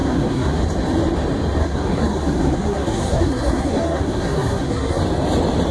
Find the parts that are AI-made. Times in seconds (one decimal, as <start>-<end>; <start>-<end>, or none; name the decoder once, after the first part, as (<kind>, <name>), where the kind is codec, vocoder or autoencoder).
0.0-0.6 (codec, SNAC); 1.6-5.0